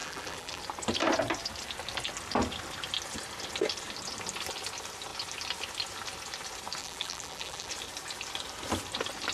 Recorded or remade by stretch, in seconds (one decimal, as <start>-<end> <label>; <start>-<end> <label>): 0.0-0.6 remade; 0.6-6.8 recorded; 6.8-7.7 remade; 7.7-9.3 recorded